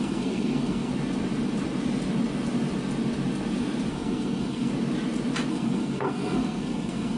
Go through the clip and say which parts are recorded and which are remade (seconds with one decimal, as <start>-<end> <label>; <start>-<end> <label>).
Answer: 0.0-0.9 remade; 0.9-3.9 recorded; 3.9-4.7 remade; 4.7-5.5 recorded; 5.5-7.2 remade